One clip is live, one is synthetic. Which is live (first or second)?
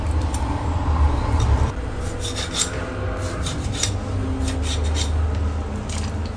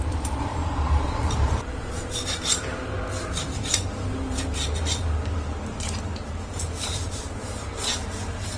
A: first